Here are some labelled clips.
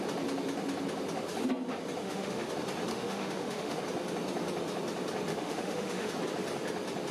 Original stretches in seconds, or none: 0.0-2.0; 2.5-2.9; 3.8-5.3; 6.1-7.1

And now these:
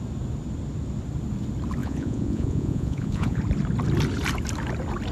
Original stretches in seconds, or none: 0.0-1.8; 3.4-5.1